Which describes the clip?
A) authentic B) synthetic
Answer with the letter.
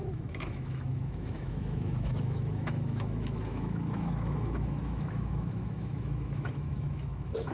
B